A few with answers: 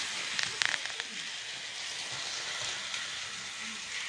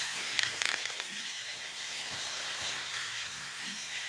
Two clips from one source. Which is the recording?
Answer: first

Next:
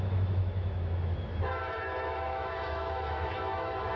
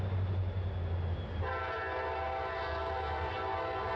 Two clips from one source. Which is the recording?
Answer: second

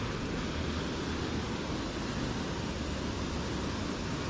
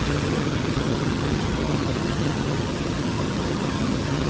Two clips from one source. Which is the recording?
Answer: first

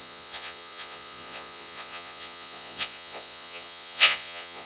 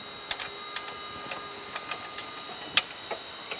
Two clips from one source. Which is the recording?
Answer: second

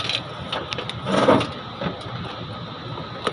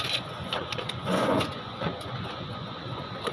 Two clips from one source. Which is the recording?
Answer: first